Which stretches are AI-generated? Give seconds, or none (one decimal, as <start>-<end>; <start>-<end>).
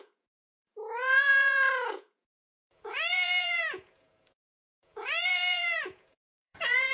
0.0-6.9